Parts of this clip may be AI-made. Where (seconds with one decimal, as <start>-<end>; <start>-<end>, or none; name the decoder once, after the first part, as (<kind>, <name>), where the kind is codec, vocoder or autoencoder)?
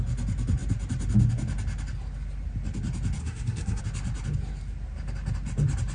3.2-3.8 (codec, SNAC)